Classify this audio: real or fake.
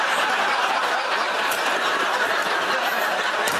real